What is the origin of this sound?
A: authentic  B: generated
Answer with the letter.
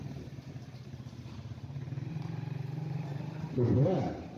B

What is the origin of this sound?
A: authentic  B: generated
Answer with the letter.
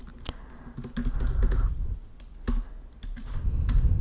A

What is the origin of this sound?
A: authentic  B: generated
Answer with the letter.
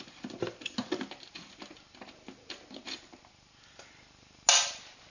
A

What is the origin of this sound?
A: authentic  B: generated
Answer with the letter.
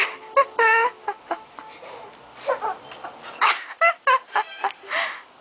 A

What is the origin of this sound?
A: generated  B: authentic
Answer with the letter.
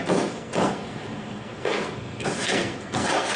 A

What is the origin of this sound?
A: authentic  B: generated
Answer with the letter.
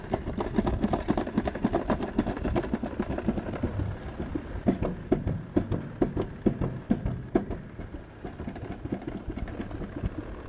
A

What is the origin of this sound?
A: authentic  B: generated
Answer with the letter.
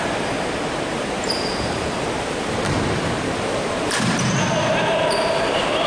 B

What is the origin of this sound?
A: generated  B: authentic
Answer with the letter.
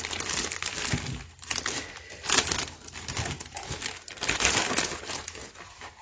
B